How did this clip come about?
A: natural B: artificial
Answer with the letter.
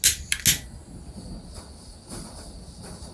A